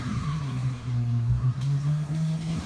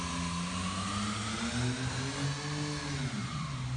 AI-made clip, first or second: first